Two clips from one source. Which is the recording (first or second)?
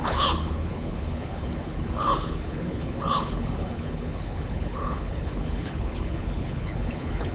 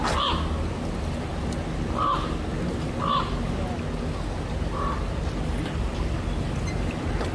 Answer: second